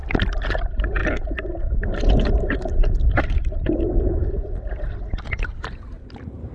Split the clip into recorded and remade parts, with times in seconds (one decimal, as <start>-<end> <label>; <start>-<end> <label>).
0.0-0.5 remade; 0.5-1.0 recorded; 1.0-4.9 remade; 4.9-6.5 recorded

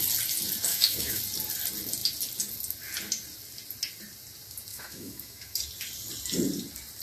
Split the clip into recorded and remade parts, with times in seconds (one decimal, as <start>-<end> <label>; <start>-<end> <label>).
0.0-0.7 recorded; 0.7-1.2 remade; 1.2-4.7 recorded; 4.7-5.6 remade; 5.6-7.0 recorded

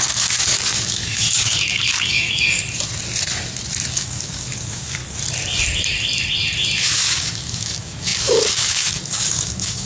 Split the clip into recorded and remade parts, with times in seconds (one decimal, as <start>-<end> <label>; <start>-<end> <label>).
0.0-2.6 remade; 2.6-3.9 recorded; 3.9-5.0 remade; 5.0-6.8 recorded; 6.8-9.9 remade

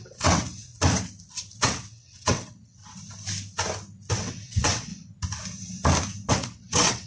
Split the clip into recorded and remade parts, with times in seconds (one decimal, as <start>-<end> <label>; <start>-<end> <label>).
0.0-0.7 remade; 0.7-1.6 recorded; 1.6-2.8 remade; 2.8-4.1 recorded; 4.1-4.9 remade; 4.9-6.3 recorded; 6.3-7.1 remade

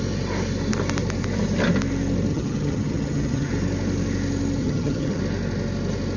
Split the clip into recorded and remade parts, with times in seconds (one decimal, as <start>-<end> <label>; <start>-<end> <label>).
0.0-2.3 recorded; 2.3-3.5 remade; 3.5-4.6 recorded; 4.6-5.2 remade; 5.2-6.2 recorded

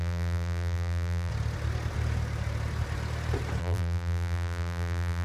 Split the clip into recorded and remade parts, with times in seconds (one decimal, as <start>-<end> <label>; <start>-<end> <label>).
0.0-1.3 remade; 1.3-3.6 recorded; 3.6-5.2 remade